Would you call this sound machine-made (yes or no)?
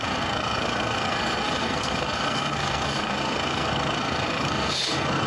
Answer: yes